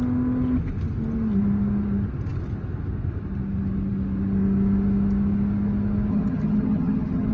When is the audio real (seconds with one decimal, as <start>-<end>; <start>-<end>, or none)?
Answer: 0.0-6.1